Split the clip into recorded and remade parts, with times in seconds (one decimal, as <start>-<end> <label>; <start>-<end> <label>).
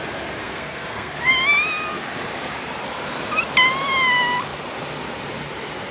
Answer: 0.0-0.4 recorded; 0.4-1.1 remade; 1.1-5.9 recorded